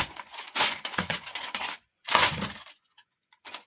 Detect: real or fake fake